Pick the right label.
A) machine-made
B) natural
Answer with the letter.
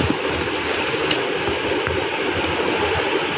B